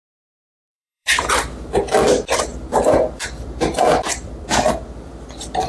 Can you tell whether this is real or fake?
fake